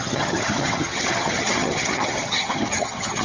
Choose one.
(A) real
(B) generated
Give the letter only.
B